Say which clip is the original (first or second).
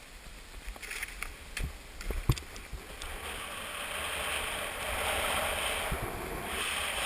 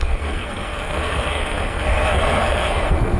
first